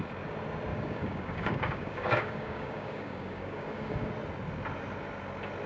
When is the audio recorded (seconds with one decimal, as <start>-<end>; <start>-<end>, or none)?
0.0-0.7; 4.1-5.7